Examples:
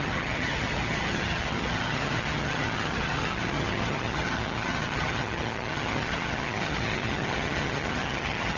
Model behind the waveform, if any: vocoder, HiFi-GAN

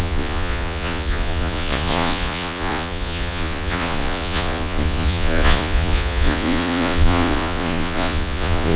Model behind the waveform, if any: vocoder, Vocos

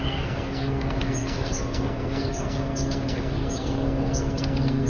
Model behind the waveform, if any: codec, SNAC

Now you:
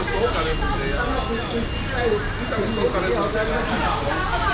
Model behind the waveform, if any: none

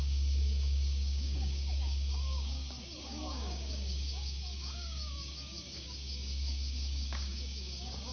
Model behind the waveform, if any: codec, DAC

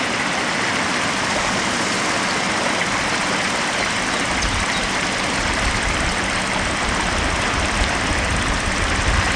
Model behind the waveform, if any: none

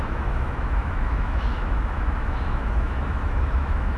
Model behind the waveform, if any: autoencoder, DAC-VAE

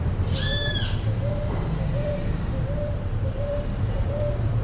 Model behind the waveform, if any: vocoder, BigVGAN v2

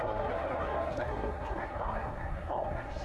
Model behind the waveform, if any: codec, SNAC